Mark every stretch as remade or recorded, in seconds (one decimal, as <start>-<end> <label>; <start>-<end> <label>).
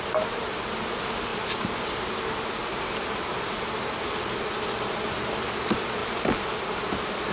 0.0-7.3 recorded